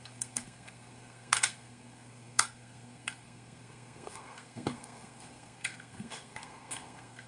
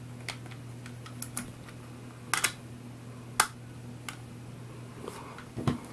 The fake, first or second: first